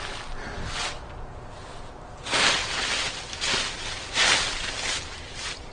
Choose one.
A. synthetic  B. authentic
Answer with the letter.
B